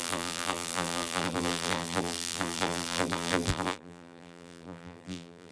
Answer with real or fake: fake